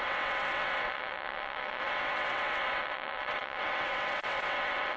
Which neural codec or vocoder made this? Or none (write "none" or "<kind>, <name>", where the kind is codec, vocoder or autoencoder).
vocoder, WaveNeXt